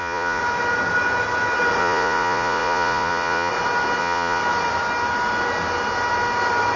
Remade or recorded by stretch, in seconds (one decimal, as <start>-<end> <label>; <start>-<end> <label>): 0.0-0.4 remade; 0.4-1.8 recorded; 1.8-3.5 remade; 3.5-4.0 recorded; 4.0-4.4 remade; 4.4-6.8 recorded